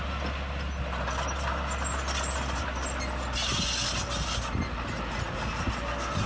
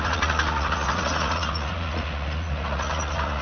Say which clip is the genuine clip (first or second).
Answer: first